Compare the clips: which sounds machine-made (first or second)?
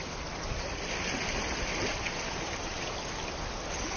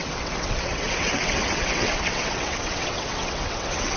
second